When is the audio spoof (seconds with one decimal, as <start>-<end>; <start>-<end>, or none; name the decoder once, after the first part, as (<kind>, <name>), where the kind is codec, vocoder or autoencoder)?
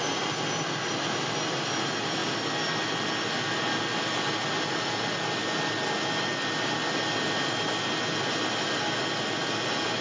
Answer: none